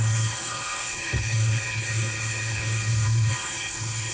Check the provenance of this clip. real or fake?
fake